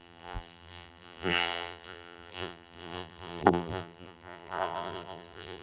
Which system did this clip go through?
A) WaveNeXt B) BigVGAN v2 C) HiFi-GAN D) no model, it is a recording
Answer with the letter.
B